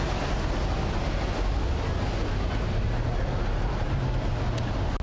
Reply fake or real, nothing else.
real